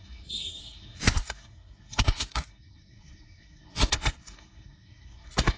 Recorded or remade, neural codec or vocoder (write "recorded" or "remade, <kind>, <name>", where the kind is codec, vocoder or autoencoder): remade, codec, SNAC